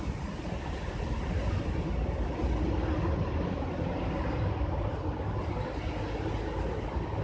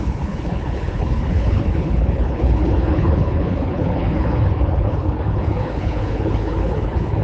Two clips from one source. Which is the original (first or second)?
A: first